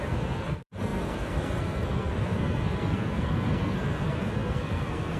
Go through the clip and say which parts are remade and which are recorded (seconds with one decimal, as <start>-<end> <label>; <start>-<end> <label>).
0.0-5.2 remade